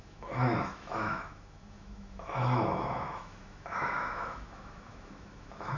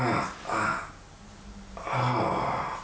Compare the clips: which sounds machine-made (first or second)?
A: first